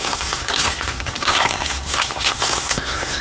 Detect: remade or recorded remade